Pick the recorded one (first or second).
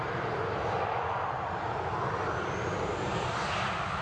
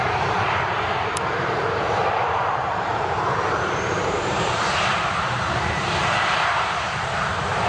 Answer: first